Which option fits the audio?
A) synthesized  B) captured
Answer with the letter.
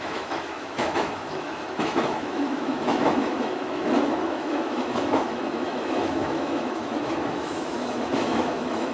A